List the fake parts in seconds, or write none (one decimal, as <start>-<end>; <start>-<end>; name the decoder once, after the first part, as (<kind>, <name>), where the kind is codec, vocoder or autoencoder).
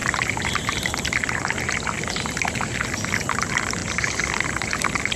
none